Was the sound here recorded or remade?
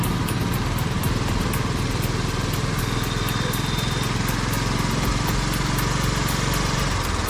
recorded